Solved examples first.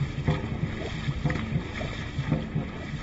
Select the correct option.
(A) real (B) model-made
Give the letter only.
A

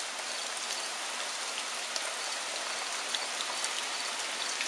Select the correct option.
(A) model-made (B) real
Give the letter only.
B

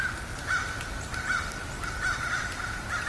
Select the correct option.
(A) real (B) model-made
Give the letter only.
A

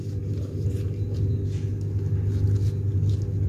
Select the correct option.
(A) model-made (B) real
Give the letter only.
B